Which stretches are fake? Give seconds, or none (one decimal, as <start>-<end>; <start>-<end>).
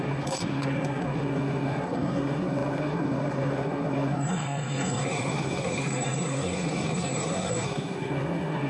0.0-8.7